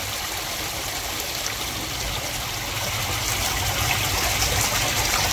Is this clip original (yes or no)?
yes